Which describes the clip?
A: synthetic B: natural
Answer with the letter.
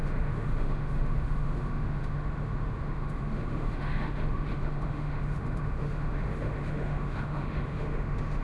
A